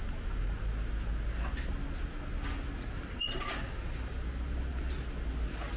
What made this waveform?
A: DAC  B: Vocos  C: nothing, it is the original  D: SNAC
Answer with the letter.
C